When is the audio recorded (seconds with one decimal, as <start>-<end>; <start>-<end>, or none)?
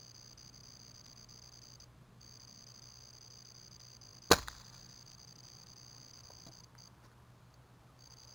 0.0-8.3